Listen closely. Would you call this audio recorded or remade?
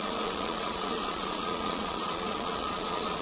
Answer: remade